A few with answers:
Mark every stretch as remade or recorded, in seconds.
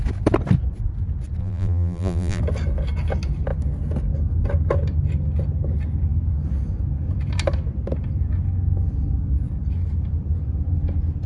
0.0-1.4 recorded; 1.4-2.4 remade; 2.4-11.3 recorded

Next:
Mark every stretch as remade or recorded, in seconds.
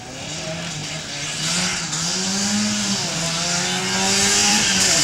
0.0-4.4 recorded; 4.4-5.0 remade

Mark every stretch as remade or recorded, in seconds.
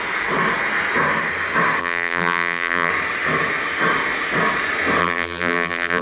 0.0-1.8 recorded; 1.8-2.9 remade; 2.9-5.0 recorded; 5.0-6.0 remade